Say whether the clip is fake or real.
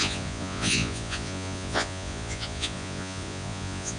fake